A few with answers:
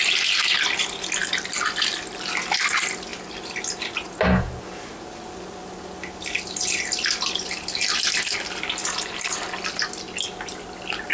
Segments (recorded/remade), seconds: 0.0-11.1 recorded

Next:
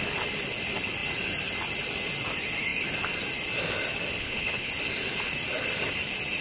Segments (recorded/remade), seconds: 0.0-4.2 recorded; 4.2-4.7 remade; 4.7-6.4 recorded

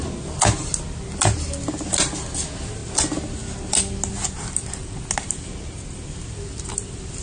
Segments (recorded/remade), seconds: 0.0-7.2 recorded

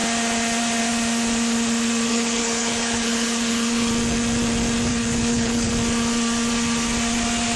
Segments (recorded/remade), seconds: 0.0-2.1 recorded; 2.1-3.9 remade; 3.9-4.9 recorded; 4.9-5.7 remade; 5.7-7.6 recorded

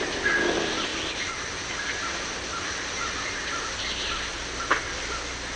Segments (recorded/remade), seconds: 0.0-5.6 recorded

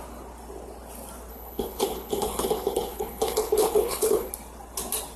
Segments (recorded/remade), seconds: 0.0-1.3 recorded; 1.3-4.3 remade; 4.3-5.2 recorded

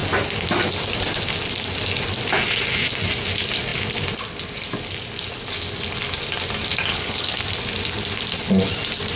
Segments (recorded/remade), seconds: 0.0-6.9 recorded; 6.9-7.4 remade; 7.4-9.2 recorded